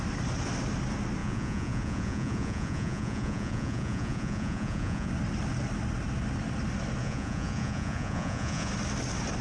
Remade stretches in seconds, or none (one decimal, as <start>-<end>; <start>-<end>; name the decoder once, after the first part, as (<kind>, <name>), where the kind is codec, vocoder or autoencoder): 1.2-5.1 (vocoder, Vocos); 7.0-8.7